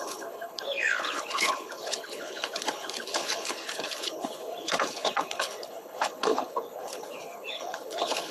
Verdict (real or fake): fake